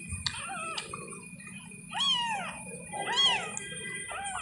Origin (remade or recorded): recorded